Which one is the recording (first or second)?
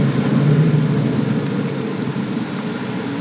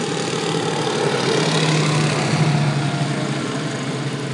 second